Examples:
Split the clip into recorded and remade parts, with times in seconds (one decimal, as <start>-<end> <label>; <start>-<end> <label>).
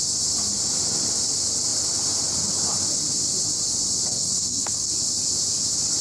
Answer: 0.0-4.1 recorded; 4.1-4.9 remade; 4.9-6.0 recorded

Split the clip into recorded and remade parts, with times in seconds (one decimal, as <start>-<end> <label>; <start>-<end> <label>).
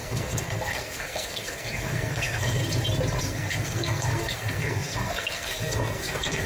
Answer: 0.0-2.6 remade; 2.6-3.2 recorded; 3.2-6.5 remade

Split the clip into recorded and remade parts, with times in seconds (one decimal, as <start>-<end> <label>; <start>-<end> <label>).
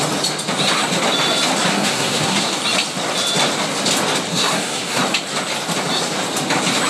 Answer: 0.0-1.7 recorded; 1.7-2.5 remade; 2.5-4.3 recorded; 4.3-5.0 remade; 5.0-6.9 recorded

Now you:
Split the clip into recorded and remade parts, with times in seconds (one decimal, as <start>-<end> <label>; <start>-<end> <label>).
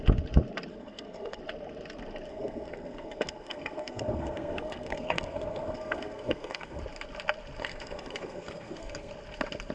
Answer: 0.0-0.7 recorded; 0.7-1.4 remade; 1.4-2.3 recorded; 2.3-6.8 remade; 6.8-7.6 recorded; 7.6-9.1 remade; 9.1-9.7 recorded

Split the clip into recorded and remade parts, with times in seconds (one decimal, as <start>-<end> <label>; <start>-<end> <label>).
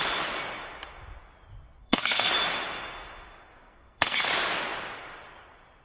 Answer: 0.0-1.8 recorded; 1.8-2.3 remade; 2.3-3.5 recorded; 3.5-4.2 remade; 4.2-5.8 recorded